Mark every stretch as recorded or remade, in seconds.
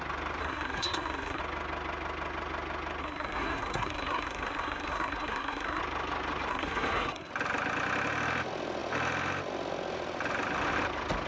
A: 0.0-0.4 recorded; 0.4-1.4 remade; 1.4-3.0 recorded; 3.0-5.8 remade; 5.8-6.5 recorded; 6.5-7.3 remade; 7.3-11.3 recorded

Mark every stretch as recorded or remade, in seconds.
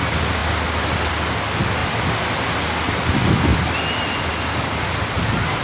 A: 0.0-5.6 recorded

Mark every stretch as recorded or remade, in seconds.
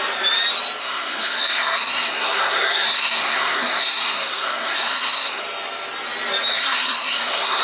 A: 0.0-0.8 recorded; 0.8-5.4 remade; 5.4-6.5 recorded; 6.5-7.6 remade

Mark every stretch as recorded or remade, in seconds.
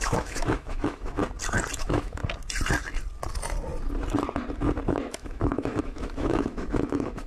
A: 0.0-1.2 remade; 1.2-1.8 recorded; 1.8-2.2 remade; 2.2-4.9 recorded; 4.9-7.3 remade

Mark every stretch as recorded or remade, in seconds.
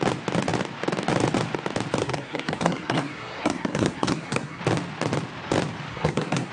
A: 0.0-2.0 recorded; 2.0-4.6 remade; 4.6-5.9 recorded; 5.9-6.5 remade